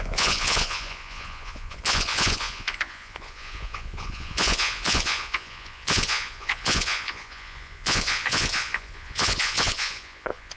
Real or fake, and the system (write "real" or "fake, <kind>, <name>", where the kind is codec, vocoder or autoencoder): fake, vocoder, Vocos